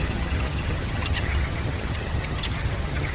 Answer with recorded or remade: remade